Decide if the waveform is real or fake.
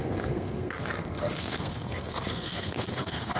fake